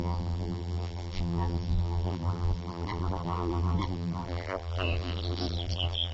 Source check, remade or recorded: remade